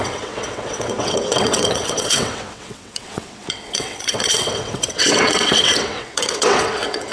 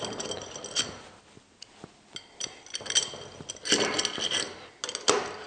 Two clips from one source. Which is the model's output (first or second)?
first